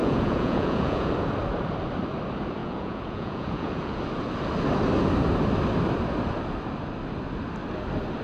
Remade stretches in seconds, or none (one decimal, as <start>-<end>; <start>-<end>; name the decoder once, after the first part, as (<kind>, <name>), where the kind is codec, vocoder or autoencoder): 0.0-1.1 (vocoder, Vocos); 2.6-4.0